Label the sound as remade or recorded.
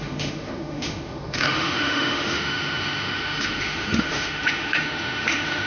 remade